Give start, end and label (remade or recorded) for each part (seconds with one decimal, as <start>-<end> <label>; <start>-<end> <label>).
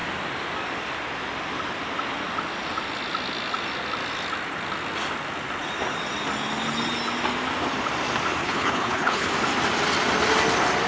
0.0-8.4 recorded; 8.4-9.3 remade; 9.3-10.9 recorded